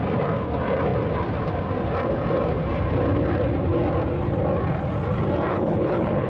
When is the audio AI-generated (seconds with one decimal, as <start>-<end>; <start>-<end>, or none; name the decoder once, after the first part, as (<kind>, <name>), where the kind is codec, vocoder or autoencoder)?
5.5-6.3 (codec, HILCodec)